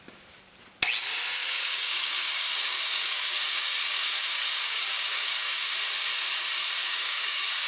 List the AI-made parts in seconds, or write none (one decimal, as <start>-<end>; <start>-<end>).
1.4-5.7; 6.8-7.7